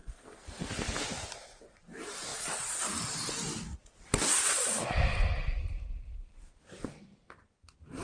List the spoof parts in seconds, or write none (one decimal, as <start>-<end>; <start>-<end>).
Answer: 0.0-0.7

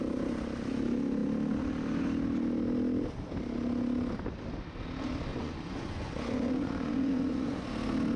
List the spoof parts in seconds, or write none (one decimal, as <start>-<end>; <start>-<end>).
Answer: 5.3-7.6

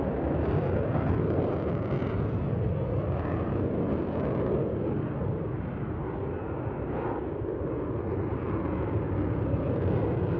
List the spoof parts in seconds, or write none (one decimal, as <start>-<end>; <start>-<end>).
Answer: none

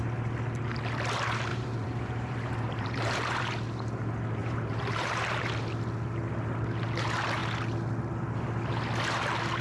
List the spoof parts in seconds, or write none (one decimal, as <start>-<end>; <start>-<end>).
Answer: 1.5-3.4; 4.4-5.5

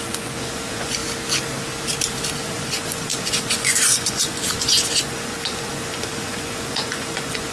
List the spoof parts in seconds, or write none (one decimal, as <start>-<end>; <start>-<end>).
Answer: 0.0-1.0; 2.3-7.5

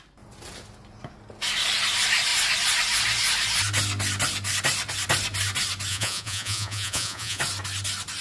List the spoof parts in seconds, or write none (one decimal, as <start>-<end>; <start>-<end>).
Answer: 5.9-7.4

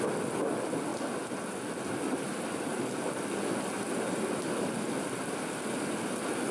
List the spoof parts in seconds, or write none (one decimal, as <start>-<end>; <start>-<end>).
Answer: none

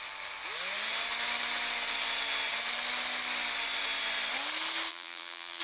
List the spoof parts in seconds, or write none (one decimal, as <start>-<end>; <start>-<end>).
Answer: 4.9-5.6